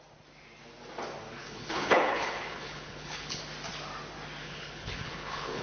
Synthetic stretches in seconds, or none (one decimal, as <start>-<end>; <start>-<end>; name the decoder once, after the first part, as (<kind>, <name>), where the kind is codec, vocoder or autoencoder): 1.4-3.4 (codec, HILCodec); 4.4-5.6

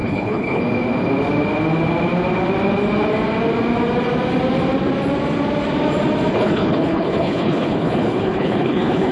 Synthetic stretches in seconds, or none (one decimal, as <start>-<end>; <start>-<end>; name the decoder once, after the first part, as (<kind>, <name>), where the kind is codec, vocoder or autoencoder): 0.0-0.6 (codec, HILCodec); 6.3-9.1

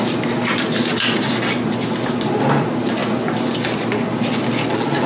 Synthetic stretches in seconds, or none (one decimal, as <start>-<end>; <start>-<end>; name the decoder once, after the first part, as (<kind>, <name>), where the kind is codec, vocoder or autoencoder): none

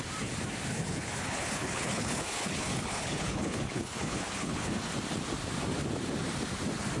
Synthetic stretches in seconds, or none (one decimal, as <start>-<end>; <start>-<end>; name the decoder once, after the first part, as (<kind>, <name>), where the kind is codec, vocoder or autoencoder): 0.7-4.9 (codec, HILCodec)

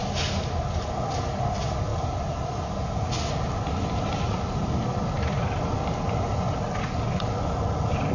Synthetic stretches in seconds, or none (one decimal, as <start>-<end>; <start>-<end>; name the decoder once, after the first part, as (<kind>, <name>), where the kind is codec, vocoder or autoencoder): none

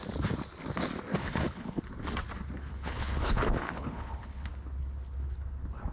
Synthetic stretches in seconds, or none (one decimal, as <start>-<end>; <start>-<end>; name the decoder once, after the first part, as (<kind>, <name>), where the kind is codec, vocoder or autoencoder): 1.1-1.8 (codec, HILCodec); 2.7-4.5

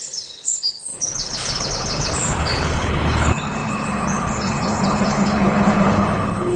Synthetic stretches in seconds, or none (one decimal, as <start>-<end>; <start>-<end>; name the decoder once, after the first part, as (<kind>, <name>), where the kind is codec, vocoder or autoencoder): 0.0-6.6 (codec, HILCodec)